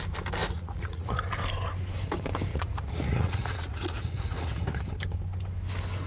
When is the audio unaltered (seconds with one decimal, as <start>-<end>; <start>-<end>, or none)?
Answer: 0.0-0.4; 1.2-2.5; 4.9-6.1